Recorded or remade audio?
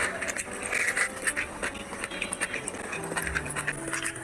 recorded